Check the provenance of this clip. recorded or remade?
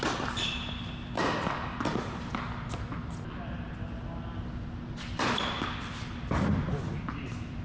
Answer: recorded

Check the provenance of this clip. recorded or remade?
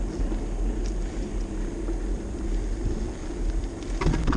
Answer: recorded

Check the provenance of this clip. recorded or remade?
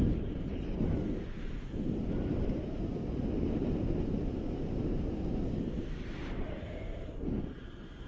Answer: remade